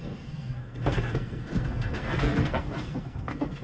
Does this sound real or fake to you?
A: fake